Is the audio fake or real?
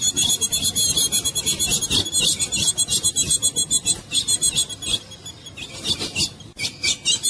real